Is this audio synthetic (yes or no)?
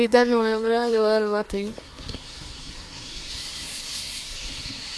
yes